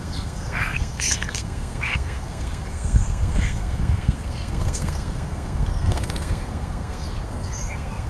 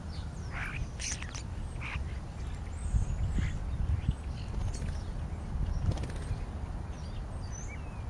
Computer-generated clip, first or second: first